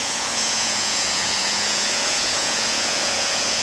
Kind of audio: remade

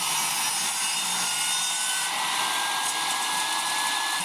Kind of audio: recorded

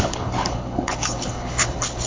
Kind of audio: remade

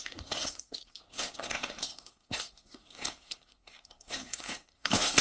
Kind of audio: remade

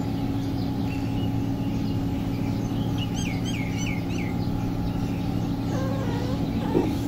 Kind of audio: recorded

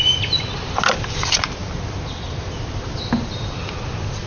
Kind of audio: recorded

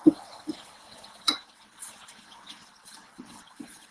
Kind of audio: remade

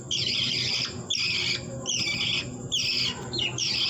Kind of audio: recorded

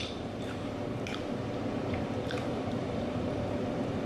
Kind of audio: remade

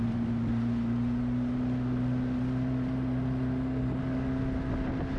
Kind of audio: recorded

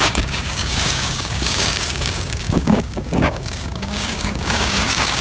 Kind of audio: remade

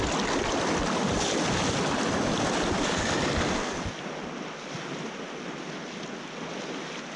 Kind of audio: recorded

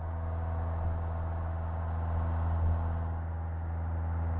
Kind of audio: recorded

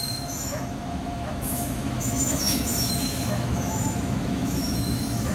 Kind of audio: remade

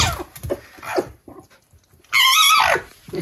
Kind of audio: recorded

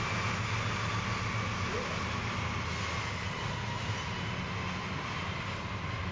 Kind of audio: recorded